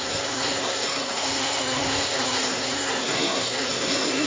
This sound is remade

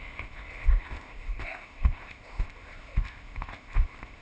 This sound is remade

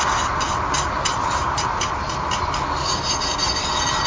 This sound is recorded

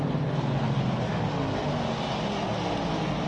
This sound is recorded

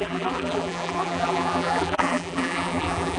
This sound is remade